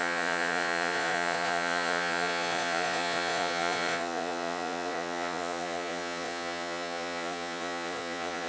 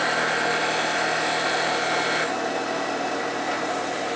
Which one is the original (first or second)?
second